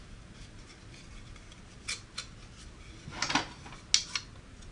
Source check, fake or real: real